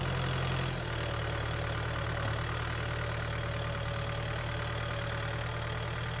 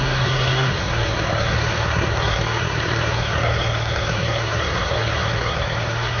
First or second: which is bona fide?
first